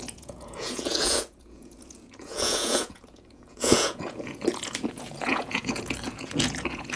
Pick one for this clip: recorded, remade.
remade